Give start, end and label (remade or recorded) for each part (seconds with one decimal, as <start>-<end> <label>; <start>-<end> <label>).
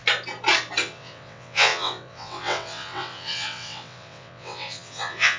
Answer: 0.0-0.8 recorded; 0.8-5.4 remade